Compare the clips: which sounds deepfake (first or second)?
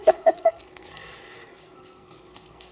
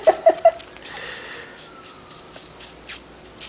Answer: first